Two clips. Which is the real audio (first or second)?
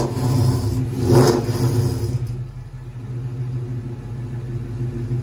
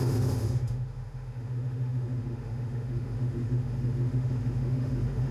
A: first